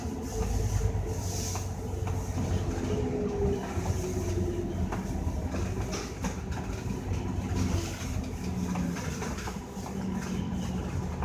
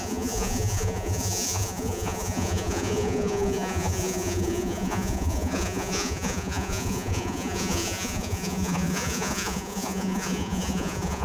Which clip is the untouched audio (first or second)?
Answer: first